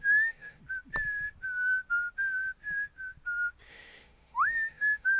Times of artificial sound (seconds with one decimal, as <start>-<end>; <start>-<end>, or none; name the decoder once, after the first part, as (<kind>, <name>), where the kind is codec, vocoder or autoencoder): 0.0-0.6 (autoencoder, DAC-VAE); 3.7-5.2